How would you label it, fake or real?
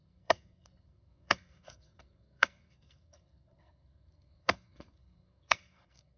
fake